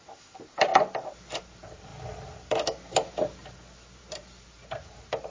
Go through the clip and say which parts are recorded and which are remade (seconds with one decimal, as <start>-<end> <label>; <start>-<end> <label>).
0.0-0.7 remade; 0.7-1.4 recorded; 1.4-1.9 remade; 1.9-4.0 recorded; 4.0-5.3 remade